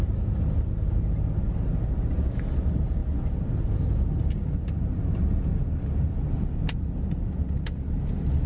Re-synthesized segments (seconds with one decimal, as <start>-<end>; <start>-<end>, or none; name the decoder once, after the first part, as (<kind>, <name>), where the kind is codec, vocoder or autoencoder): none